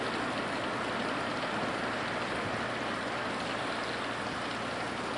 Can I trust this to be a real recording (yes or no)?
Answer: yes